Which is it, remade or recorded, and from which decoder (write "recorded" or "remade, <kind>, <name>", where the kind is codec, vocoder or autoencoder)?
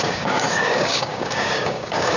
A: remade, codec, DAC